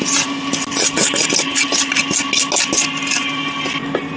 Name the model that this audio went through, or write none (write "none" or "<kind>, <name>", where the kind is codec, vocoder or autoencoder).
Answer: none